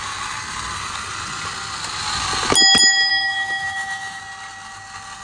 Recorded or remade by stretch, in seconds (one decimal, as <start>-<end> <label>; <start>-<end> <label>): 0.0-3.1 recorded; 3.1-4.2 remade; 4.2-5.2 recorded